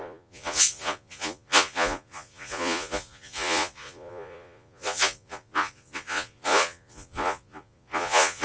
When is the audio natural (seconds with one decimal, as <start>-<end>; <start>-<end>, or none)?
none